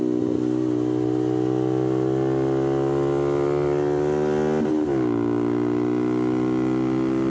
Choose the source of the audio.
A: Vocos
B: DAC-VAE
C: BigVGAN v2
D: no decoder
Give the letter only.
D